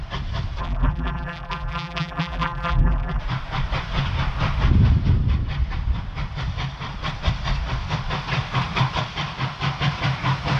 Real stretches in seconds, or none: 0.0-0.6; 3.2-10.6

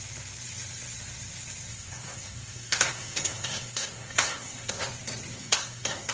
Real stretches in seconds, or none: 0.0-1.7; 4.8-5.3

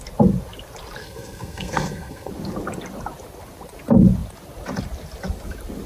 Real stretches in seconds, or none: 0.0-1.0; 2.3-5.9

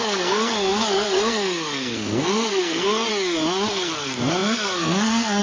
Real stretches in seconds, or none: 3.1-3.7